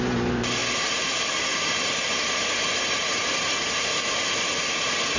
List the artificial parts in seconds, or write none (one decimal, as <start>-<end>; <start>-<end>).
0.0-0.6; 1.4-5.2